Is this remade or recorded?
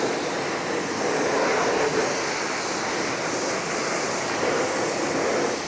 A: recorded